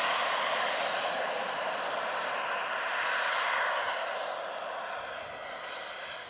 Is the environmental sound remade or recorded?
recorded